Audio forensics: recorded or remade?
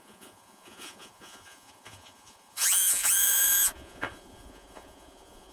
remade